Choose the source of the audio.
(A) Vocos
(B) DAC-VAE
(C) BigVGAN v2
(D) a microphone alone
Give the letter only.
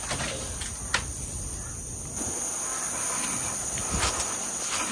D